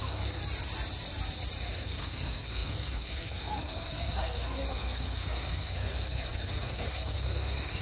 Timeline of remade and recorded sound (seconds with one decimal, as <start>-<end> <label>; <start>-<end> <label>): 0.0-0.4 remade; 0.4-1.6 recorded; 1.6-7.8 remade

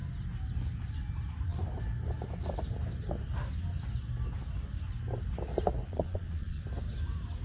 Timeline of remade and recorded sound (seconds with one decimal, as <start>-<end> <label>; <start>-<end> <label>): 0.0-5.8 recorded; 5.8-6.6 remade; 6.6-7.4 recorded

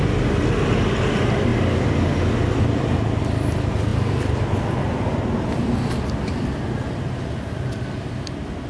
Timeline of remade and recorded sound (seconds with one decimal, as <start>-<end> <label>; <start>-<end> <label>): 0.0-8.7 recorded

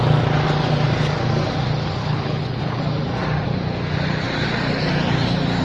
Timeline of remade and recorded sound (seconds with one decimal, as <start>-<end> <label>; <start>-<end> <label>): 0.0-2.0 recorded; 2.0-2.8 remade; 2.8-5.6 recorded

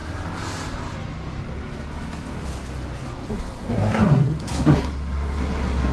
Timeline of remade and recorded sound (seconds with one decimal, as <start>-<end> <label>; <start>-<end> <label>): 0.0-3.3 recorded; 3.3-5.9 remade